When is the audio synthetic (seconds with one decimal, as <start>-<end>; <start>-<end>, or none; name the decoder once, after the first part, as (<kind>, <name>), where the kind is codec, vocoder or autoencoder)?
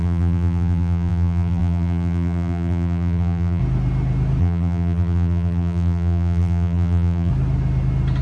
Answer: 0.0-3.6 (vocoder, BigVGAN v2); 4.4-7.3